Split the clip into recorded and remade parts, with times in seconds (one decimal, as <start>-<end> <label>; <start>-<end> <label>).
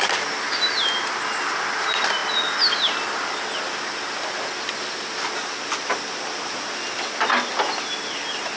0.0-8.6 recorded